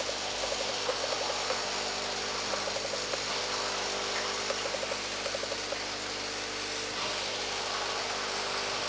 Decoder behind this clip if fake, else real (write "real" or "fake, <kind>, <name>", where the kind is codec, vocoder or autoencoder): real